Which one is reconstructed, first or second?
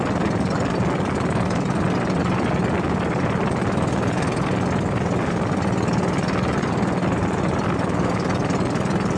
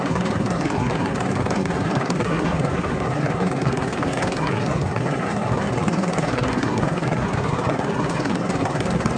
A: second